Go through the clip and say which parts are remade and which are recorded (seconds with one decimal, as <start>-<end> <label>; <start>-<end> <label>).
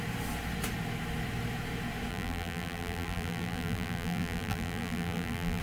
0.0-2.1 recorded; 2.1-5.6 remade